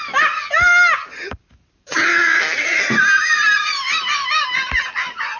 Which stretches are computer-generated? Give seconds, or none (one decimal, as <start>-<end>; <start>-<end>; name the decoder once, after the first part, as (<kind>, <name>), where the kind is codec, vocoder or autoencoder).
none